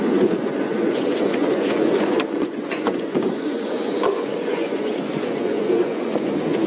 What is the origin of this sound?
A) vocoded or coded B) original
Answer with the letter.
A